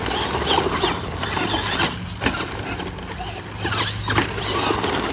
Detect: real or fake real